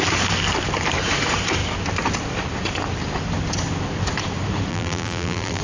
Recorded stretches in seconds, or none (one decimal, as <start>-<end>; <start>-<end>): 0.0-4.7